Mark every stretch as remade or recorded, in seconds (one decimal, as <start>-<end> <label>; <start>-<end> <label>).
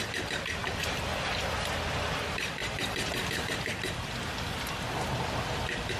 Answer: 0.0-6.0 recorded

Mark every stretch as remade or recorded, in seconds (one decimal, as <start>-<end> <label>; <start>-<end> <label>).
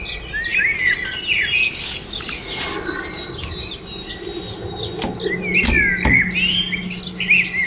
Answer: 0.0-7.7 recorded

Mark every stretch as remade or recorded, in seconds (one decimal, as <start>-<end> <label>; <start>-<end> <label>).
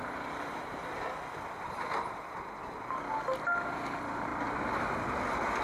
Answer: 0.0-5.6 recorded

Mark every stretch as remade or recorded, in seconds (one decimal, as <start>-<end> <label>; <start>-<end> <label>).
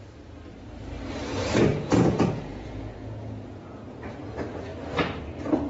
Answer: 0.0-1.7 recorded; 1.7-4.0 remade; 4.0-5.7 recorded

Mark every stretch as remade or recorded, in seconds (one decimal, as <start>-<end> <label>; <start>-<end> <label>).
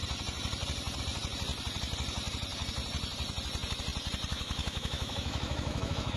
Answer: 0.0-4.3 recorded; 4.3-6.2 remade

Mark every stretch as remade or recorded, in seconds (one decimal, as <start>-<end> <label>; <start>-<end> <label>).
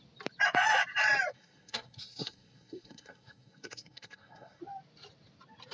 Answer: 0.0-1.3 recorded; 1.3-4.6 remade; 4.6-5.7 recorded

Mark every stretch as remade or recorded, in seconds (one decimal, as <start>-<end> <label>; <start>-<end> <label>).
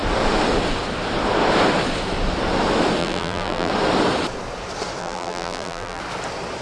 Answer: 0.0-3.0 recorded; 3.0-3.7 remade; 3.7-5.0 recorded; 5.0-6.0 remade; 6.0-6.6 recorded